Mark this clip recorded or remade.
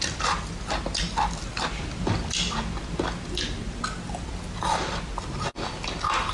recorded